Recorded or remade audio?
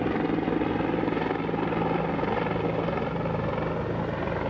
recorded